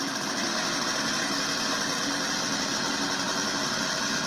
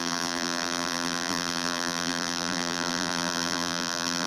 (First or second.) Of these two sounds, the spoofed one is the second